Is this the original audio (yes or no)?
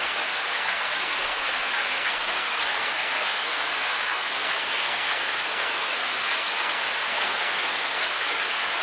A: no